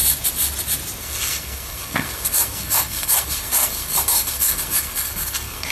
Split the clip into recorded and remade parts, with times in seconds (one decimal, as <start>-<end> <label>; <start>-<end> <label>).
0.0-1.0 recorded; 1.0-5.7 remade